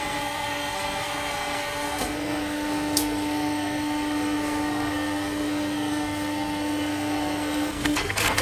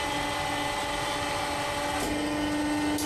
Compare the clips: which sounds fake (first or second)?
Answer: first